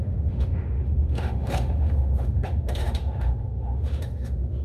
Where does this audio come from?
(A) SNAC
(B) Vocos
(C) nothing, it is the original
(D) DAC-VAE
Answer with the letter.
D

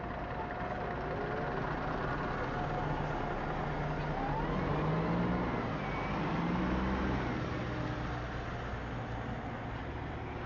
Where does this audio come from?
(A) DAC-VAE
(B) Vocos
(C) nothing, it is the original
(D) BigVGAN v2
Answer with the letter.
C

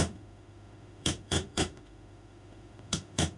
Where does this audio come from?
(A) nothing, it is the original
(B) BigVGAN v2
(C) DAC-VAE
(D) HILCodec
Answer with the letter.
C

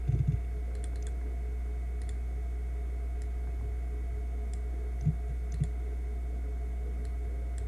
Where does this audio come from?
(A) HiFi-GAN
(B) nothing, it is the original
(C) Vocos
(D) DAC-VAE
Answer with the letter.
B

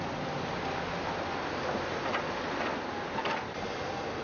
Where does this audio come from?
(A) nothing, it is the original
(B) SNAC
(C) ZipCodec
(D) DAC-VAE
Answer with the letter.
A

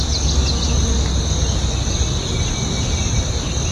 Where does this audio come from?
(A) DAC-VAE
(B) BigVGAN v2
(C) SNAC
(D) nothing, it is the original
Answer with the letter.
D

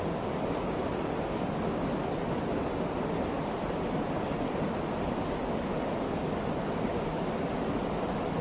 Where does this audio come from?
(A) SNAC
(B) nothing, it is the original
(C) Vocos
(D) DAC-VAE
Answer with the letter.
B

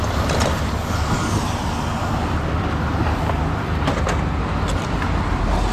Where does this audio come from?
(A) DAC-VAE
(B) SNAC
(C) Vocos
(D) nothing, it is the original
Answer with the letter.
D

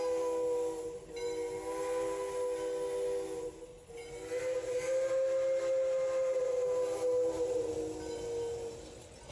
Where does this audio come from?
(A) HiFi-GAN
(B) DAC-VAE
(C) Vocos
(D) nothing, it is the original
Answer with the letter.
D